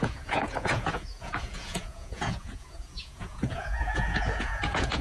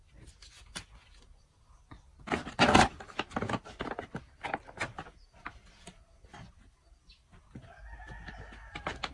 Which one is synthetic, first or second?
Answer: first